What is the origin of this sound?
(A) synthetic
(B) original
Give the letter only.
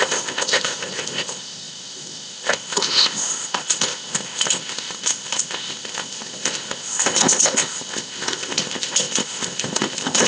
A